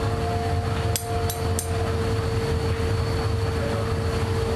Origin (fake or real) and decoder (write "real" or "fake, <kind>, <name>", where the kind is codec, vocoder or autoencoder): real